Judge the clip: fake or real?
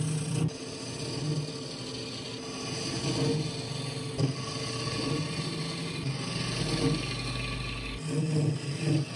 real